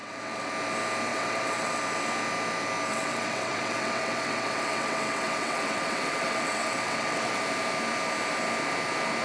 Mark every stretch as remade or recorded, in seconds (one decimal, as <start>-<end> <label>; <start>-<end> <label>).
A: 0.0-0.5 remade; 0.5-1.1 recorded; 1.1-1.8 remade; 1.8-2.9 recorded; 2.9-7.4 remade; 7.4-9.2 recorded